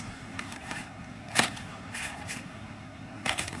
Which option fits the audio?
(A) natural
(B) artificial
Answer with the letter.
B